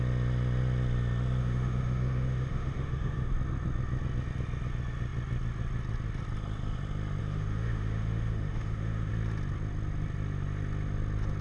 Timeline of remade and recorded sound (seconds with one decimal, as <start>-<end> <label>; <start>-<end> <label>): 0.0-1.4 recorded; 1.4-3.3 remade; 3.3-7.2 recorded; 7.2-9.1 remade; 9.1-11.4 recorded